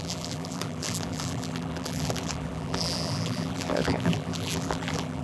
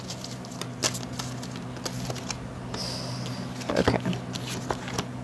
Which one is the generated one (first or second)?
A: first